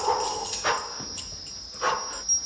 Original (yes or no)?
yes